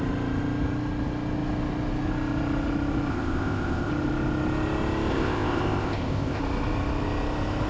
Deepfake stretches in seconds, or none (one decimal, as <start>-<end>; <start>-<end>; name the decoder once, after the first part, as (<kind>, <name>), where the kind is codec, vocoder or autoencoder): 3.1-3.9 (codec, ZipCodec); 5.1-6.4